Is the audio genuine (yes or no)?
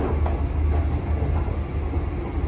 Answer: yes